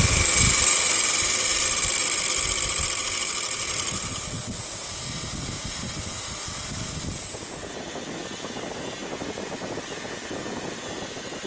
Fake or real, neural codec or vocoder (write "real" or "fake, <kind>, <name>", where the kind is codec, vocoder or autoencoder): real